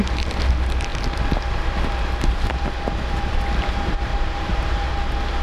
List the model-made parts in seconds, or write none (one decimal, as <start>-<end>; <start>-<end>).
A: 4.1-4.9